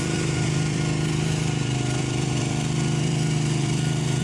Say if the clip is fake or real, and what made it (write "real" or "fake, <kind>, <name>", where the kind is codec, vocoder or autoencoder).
fake, vocoder, BigVGAN v2